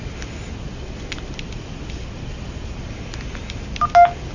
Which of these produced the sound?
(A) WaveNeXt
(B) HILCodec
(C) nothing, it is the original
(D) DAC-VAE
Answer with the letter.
C